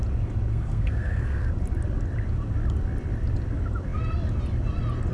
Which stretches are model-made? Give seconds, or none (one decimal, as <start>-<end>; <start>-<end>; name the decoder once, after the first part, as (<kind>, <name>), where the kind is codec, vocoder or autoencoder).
0.5-1.5 (codec, SNAC)